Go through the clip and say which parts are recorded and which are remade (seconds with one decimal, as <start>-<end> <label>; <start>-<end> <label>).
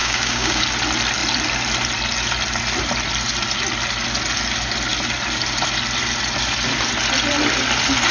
0.0-0.6 remade; 0.6-8.1 recorded